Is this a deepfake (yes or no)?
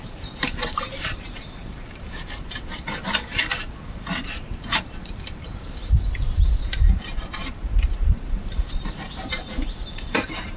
yes